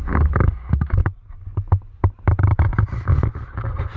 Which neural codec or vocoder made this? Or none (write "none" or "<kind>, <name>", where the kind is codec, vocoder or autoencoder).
none